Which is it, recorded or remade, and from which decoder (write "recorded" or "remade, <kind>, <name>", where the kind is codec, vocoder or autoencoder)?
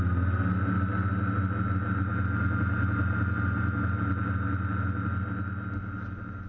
recorded